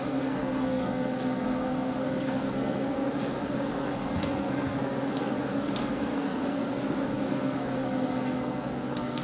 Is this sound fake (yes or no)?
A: yes